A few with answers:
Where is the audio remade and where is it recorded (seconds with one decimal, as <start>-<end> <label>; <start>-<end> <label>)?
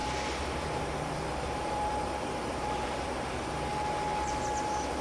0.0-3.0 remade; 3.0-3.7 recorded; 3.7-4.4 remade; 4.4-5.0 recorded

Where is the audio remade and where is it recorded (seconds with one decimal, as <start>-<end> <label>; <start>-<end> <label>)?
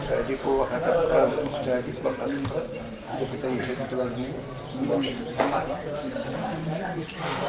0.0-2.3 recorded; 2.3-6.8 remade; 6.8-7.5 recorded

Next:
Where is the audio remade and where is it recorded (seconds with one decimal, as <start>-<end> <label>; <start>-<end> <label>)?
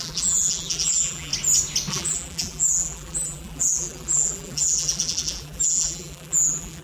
0.0-1.3 remade; 1.3-1.9 recorded; 1.9-6.8 remade